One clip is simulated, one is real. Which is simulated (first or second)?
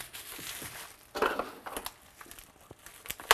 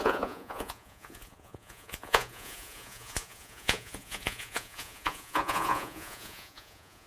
second